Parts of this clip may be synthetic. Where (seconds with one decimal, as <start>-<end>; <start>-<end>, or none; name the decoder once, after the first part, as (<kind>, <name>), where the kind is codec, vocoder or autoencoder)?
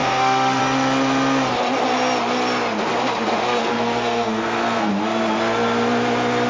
0.0-0.6 (codec, SNAC); 3.6-4.9